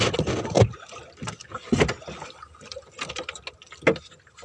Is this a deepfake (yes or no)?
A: no